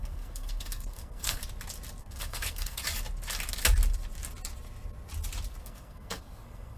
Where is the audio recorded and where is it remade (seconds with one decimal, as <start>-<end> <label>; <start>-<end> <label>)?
0.0-1.4 remade; 1.4-2.0 recorded; 2.0-2.8 remade; 2.8-5.6 recorded; 5.6-6.8 remade